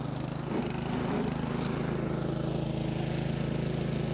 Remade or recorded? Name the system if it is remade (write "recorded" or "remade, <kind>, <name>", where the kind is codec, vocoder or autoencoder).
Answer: recorded